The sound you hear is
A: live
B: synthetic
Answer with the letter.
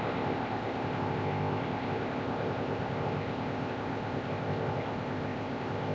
B